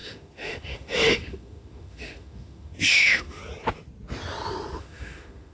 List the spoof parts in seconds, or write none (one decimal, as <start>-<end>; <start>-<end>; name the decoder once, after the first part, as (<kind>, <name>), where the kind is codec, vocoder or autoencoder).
0.0-3.4 (autoencoder, DAC-VAE); 4.8-5.5